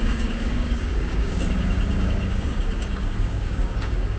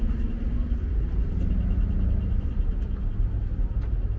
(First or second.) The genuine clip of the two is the second